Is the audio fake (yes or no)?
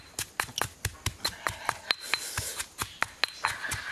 no